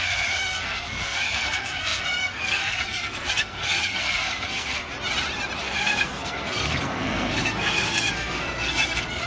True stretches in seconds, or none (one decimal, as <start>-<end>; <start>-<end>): 4.9-5.6